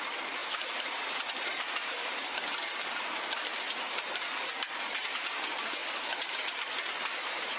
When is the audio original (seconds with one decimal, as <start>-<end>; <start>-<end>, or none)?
5.8-6.3